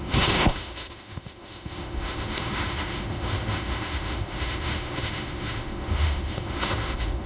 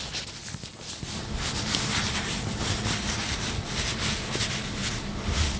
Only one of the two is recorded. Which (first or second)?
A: second